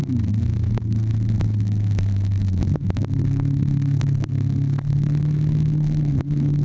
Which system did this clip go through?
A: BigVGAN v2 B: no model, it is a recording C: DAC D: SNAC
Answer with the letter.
D